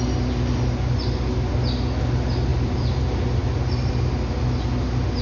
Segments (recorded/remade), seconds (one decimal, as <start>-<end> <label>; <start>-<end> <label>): 0.0-2.5 recorded; 2.5-3.0 remade; 3.0-3.4 recorded; 3.4-3.9 remade; 3.9-5.2 recorded